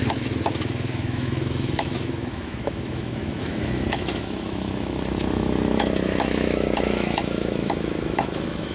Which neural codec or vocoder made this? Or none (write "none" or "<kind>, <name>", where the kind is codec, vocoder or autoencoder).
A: autoencoder, DAC-VAE